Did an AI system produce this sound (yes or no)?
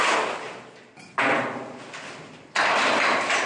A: no